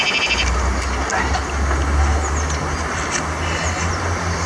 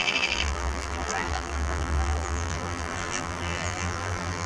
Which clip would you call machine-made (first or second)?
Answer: second